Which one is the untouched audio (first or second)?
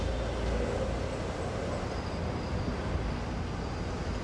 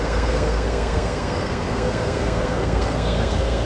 first